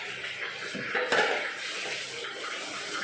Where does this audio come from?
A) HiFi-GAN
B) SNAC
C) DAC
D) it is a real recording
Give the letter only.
D